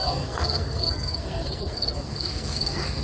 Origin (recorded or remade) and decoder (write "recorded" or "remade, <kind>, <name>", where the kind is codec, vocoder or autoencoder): remade, codec, SNAC